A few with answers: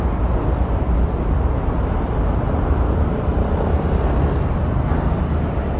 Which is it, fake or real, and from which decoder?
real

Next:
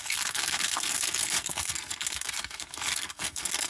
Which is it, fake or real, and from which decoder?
fake, codec, SNAC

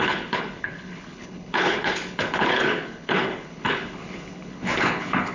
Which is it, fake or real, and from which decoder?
fake, codec, HILCodec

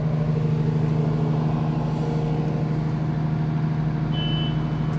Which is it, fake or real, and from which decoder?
real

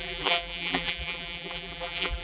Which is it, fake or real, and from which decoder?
fake, vocoder, BigVGAN v2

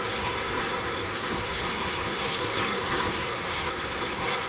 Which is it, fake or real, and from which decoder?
fake, codec, SNAC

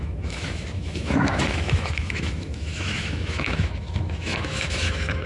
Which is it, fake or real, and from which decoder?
fake, autoencoder, DAC-VAE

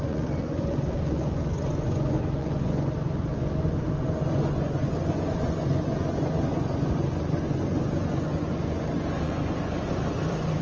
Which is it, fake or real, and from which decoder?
fake, vocoder, Vocos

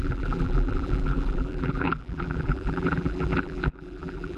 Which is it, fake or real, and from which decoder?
fake, vocoder, BigVGAN v2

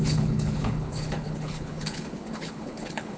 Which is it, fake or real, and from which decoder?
fake, codec, HILCodec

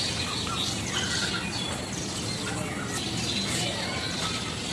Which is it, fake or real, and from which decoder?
real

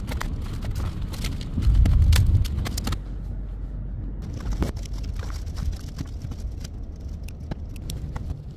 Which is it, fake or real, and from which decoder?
real